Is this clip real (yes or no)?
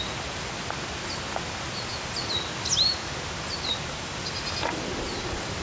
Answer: yes